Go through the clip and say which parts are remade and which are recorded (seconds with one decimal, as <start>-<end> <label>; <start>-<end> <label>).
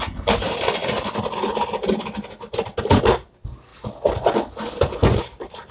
0.0-5.7 recorded